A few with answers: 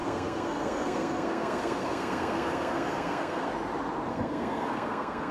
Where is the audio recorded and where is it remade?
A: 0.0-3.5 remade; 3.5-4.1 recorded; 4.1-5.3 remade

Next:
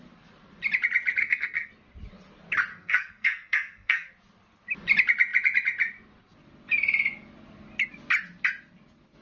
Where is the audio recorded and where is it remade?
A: 0.0-1.2 recorded; 1.2-1.7 remade; 1.7-2.7 recorded; 2.7-4.1 remade; 4.1-9.2 recorded

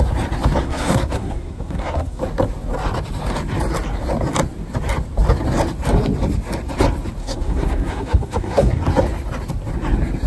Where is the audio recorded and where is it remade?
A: 0.0-0.6 recorded; 0.6-2.2 remade; 2.2-7.2 recorded; 7.2-8.8 remade; 8.8-10.3 recorded